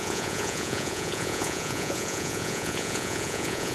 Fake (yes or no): yes